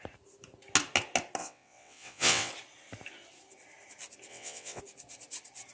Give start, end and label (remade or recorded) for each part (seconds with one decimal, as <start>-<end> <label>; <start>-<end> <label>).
0.0-1.4 recorded; 1.4-2.5 remade; 2.5-4.3 recorded; 4.3-4.8 remade; 4.8-5.7 recorded